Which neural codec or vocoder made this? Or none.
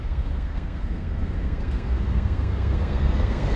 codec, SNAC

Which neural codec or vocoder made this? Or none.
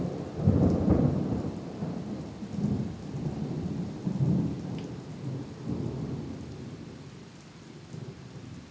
none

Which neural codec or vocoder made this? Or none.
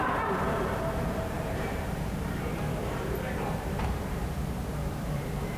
vocoder, BigVGAN v2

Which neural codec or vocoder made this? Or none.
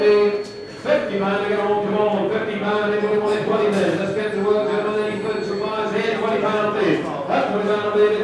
none